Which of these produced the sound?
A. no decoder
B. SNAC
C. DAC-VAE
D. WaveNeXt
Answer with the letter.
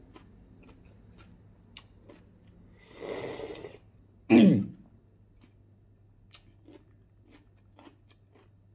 A